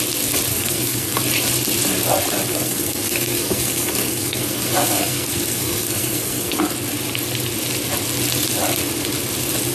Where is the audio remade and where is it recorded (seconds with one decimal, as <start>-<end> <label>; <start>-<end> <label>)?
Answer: 0.0-0.5 recorded; 0.5-1.2 remade; 1.2-2.5 recorded; 2.5-6.6 remade; 6.6-9.7 recorded

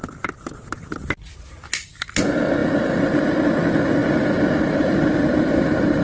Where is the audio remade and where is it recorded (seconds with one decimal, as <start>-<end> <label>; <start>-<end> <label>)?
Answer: 0.0-6.0 recorded